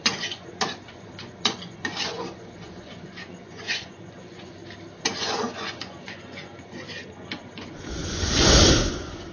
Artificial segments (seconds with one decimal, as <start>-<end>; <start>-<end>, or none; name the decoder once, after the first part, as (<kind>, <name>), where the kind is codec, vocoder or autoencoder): 0.0-4.6 (vocoder, Vocos); 5.2-9.3